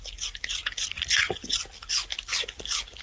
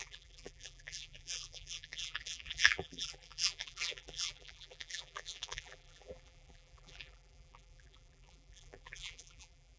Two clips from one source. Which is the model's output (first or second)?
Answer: second